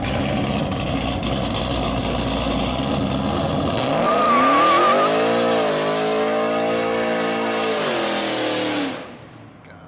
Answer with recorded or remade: recorded